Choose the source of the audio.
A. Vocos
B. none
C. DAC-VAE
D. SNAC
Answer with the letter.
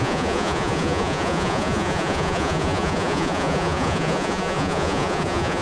A